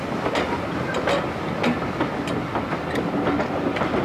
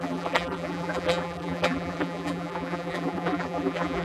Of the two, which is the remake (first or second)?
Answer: second